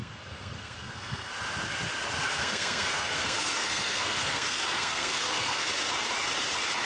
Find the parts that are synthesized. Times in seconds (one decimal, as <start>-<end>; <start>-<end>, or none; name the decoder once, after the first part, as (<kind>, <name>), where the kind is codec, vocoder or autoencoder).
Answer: 0.0-1.3 (codec, SNAC); 2.3-5.7